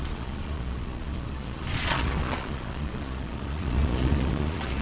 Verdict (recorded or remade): remade